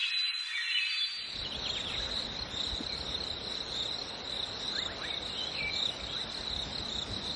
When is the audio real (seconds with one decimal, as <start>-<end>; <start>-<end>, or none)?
0.0-7.4